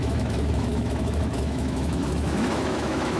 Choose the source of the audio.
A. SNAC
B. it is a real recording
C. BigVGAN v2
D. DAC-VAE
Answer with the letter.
D